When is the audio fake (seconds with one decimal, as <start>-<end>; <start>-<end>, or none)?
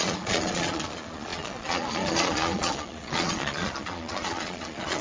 0.0-5.0